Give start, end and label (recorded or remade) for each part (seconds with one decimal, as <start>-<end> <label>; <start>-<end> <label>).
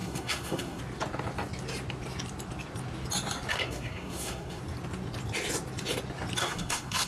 0.0-0.8 remade; 0.8-3.5 recorded; 3.5-4.6 remade; 4.6-6.4 recorded; 6.4-7.1 remade